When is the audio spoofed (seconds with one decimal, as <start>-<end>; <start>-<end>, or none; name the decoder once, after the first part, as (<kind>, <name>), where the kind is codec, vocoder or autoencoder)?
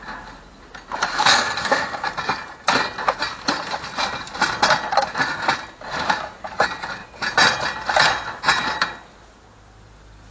1.1-2.1 (codec, SNAC)